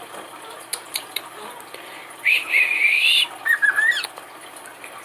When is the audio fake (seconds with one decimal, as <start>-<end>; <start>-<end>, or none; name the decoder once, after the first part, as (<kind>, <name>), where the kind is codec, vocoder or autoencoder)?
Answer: none